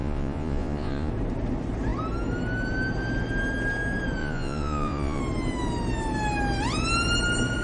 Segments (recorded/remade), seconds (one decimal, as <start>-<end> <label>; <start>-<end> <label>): 0.0-1.1 remade; 1.1-4.2 recorded; 4.2-5.2 remade; 5.2-7.6 recorded